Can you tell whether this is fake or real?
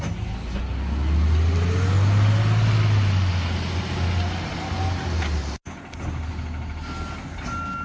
real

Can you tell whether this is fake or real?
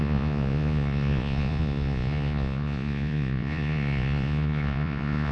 fake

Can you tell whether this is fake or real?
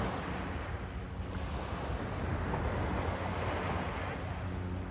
real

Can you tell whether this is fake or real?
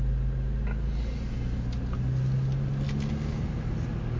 real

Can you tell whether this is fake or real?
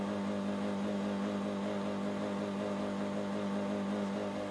real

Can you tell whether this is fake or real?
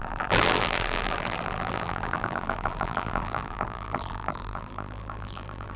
fake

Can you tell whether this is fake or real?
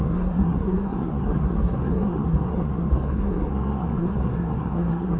fake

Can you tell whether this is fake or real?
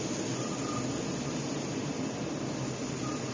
real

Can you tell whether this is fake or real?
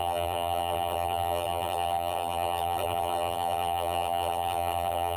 fake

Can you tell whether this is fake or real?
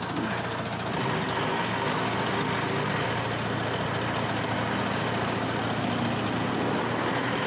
real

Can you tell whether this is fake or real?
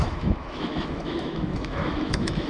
fake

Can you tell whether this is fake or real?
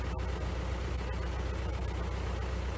real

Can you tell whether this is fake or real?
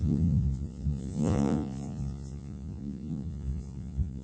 fake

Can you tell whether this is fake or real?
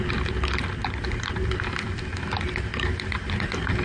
real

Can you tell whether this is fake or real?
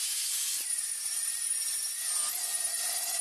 real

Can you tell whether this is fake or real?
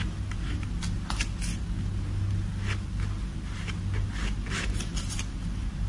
real